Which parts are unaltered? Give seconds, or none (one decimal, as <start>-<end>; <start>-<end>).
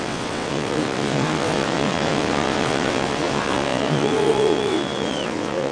none